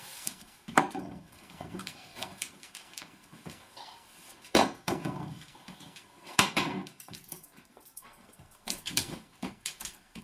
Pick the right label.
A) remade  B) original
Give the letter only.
A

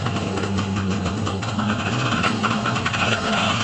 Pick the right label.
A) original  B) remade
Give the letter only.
B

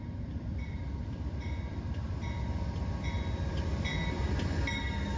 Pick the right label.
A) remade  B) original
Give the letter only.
B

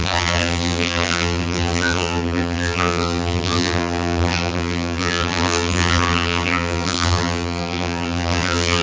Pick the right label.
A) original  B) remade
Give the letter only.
B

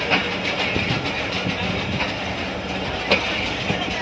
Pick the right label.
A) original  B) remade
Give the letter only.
A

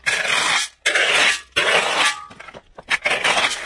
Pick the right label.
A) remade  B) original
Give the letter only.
B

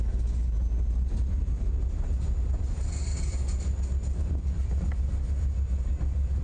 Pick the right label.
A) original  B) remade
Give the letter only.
A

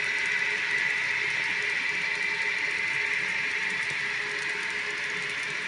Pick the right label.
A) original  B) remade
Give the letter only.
A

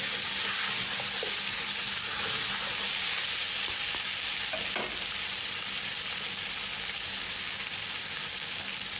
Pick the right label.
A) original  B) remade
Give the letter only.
A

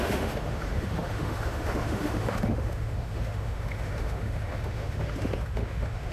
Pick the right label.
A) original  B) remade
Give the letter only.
B